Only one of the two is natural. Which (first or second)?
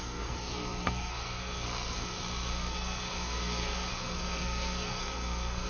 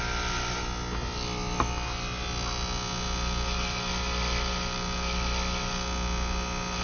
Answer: second